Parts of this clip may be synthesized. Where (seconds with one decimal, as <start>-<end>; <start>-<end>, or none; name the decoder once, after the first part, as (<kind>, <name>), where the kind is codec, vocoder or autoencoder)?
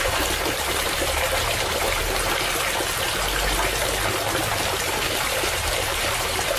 0.0-2.0 (vocoder, BigVGAN v2); 5.3-6.6